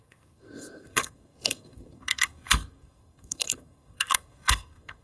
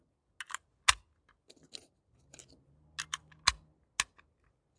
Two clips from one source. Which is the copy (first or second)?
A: first